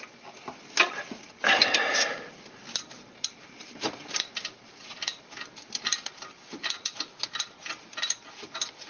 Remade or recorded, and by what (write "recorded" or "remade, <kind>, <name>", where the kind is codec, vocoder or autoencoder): recorded